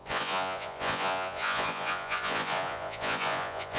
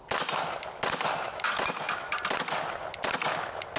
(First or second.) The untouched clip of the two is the second